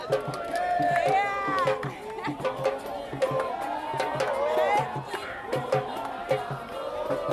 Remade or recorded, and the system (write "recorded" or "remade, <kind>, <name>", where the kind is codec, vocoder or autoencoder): recorded